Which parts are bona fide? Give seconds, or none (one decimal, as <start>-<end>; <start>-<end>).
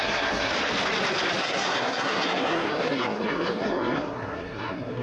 0.5-1.4